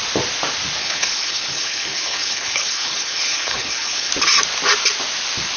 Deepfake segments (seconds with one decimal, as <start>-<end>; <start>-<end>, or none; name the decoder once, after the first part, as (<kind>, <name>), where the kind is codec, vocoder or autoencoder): 0.8-4.1 (codec, HILCodec)